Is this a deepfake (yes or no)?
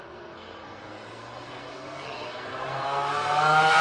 yes